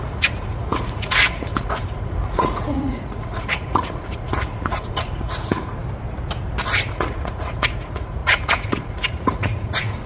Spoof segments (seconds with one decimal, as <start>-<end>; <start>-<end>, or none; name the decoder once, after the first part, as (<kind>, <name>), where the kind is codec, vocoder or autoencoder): 0.0-5.8 (vocoder, Vocos); 6.9-10.1